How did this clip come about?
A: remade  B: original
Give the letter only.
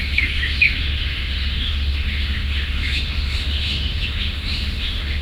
A